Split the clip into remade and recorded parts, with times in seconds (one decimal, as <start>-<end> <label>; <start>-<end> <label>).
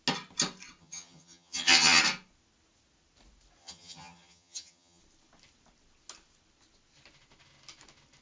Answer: 0.0-0.8 recorded; 0.8-2.0 remade; 2.0-3.6 recorded; 3.6-5.0 remade; 5.0-8.2 recorded